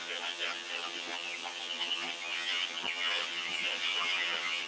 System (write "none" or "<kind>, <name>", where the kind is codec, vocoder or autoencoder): vocoder, HiFi-GAN